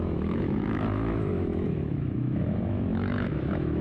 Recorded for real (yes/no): no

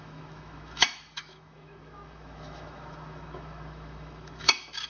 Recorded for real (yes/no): no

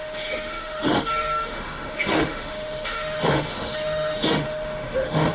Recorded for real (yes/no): no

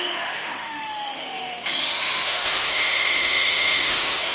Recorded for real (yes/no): no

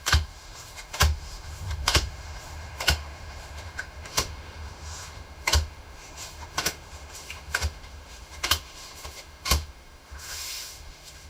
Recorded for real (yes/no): no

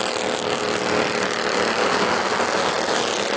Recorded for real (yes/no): yes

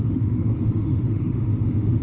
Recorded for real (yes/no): no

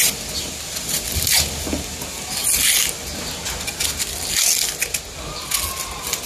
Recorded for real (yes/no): yes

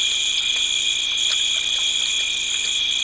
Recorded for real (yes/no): yes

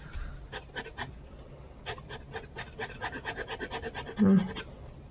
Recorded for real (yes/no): yes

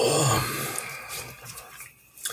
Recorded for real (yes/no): yes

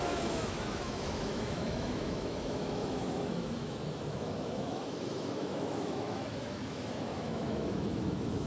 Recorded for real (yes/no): no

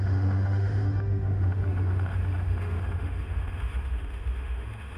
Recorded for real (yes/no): no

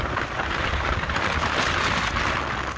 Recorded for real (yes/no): yes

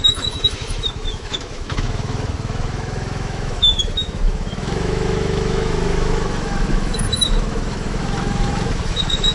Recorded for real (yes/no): no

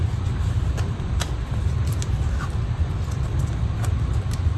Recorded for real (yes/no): yes